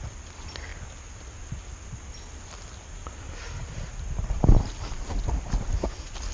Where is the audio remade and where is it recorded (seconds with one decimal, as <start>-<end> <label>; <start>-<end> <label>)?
0.0-6.3 recorded